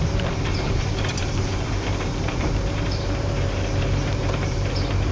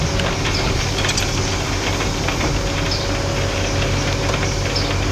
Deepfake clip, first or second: first